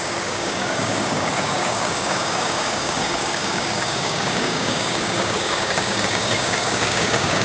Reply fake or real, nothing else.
fake